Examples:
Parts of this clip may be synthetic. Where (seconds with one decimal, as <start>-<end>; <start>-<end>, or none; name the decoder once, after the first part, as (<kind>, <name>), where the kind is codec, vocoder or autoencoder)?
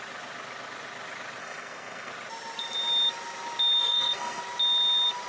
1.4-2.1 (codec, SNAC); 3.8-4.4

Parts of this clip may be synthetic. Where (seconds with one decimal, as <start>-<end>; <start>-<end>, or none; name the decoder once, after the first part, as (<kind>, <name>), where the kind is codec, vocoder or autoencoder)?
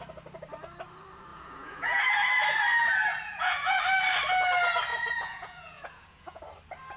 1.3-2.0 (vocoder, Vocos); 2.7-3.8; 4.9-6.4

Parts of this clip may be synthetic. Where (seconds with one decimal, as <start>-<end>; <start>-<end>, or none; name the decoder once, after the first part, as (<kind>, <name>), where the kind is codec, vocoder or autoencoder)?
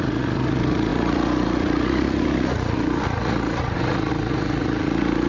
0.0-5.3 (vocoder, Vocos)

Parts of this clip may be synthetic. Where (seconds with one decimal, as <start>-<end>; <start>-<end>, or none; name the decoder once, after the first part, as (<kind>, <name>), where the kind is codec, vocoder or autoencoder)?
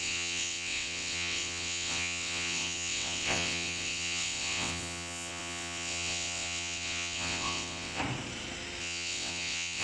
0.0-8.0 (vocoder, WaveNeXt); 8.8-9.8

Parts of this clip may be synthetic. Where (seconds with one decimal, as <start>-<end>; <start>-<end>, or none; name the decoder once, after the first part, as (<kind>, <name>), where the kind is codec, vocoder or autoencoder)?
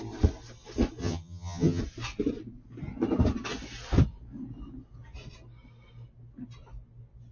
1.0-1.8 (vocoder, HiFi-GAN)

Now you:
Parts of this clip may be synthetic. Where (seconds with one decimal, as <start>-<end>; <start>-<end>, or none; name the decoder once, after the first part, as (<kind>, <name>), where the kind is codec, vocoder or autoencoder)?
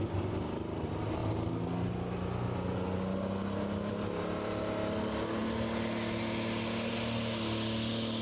none